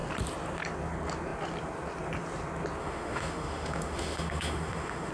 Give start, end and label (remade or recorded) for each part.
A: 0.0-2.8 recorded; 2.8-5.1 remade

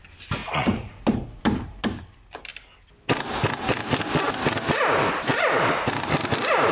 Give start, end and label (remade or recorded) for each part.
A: 0.0-0.4 recorded; 0.4-1.0 remade; 1.0-6.7 recorded

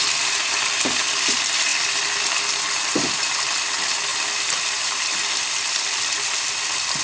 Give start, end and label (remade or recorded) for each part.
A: 0.0-1.7 recorded; 1.7-2.9 remade; 2.9-4.1 recorded; 4.1-6.4 remade; 6.4-7.0 recorded

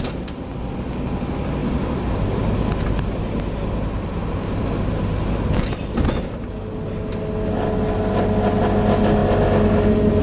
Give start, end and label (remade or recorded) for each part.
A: 0.0-10.2 recorded